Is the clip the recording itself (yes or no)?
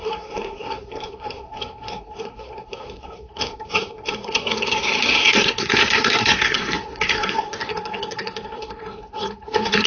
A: no